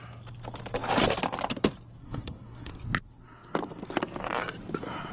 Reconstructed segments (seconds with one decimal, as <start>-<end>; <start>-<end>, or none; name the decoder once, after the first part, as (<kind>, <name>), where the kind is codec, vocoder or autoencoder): 2.0-2.7 (codec, SNAC)